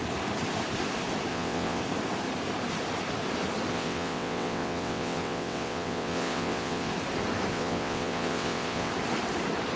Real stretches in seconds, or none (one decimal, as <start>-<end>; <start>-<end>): 0.0-1.3; 1.8-3.7; 6.9-7.5; 8.9-9.8